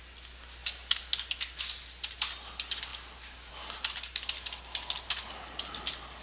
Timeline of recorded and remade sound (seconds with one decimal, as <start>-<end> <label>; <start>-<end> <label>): 0.0-6.2 recorded